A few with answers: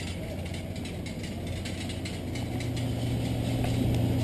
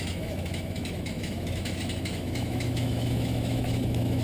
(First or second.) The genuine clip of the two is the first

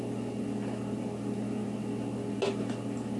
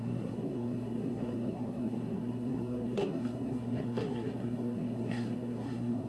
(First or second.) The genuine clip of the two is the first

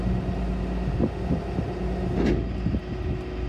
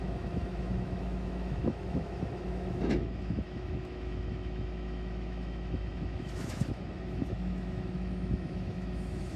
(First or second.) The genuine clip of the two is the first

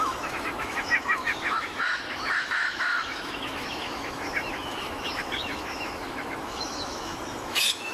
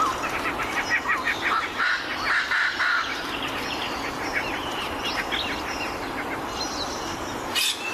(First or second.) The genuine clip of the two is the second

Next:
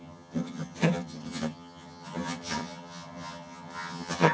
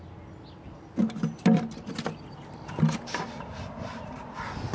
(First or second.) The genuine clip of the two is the second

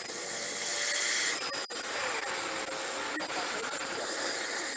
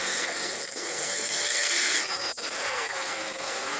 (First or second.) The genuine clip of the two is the first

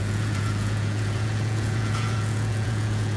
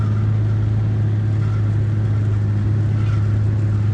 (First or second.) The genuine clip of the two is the second